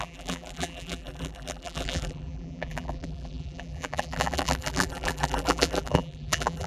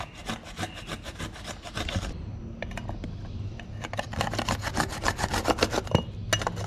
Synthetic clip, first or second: first